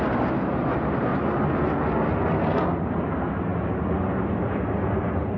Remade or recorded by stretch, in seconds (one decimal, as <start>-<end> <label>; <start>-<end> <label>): 0.0-5.4 recorded